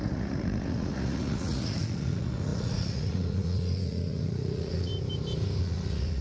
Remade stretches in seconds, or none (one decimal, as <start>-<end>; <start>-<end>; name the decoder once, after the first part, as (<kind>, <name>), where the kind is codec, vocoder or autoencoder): 0.0-4.9 (vocoder, Vocos); 5.6-6.2